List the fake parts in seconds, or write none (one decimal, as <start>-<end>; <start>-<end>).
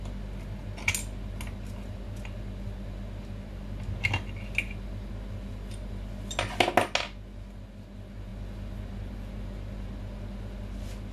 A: none